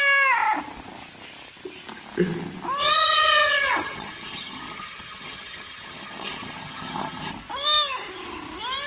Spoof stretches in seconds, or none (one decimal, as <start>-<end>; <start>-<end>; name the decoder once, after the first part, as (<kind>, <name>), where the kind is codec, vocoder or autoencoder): 2.8-7.3 (vocoder, HiFi-GAN)